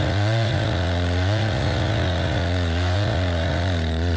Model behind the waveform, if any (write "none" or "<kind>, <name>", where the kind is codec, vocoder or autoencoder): vocoder, Vocos